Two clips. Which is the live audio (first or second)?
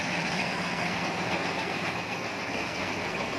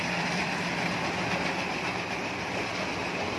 second